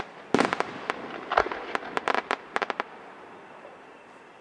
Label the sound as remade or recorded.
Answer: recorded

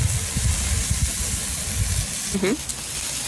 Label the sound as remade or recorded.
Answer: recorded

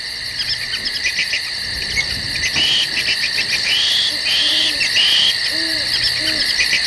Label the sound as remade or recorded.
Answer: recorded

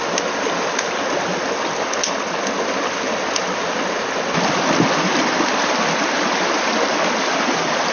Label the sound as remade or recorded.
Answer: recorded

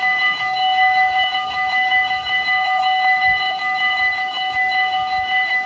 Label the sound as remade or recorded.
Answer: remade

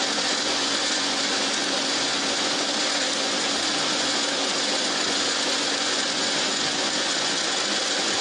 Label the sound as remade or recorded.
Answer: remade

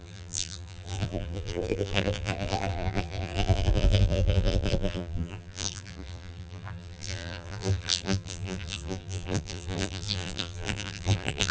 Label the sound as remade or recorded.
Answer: remade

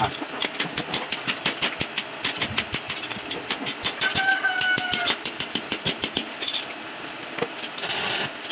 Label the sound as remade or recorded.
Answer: recorded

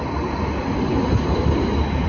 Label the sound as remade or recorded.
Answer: recorded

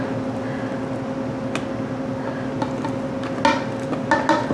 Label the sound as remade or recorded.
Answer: recorded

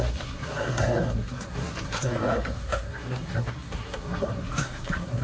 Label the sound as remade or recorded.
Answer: remade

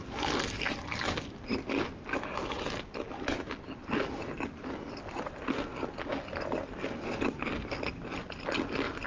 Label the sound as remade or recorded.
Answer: recorded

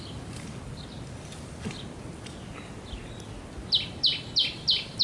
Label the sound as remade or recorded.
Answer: recorded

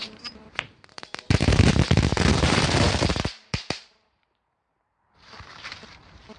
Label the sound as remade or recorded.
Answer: remade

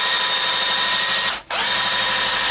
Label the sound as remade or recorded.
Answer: recorded